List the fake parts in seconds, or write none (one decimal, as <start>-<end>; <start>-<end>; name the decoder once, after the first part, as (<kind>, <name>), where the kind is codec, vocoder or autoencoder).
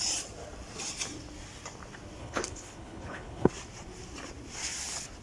2.2-3.5 (codec, HILCodec)